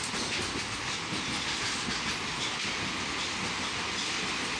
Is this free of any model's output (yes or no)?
yes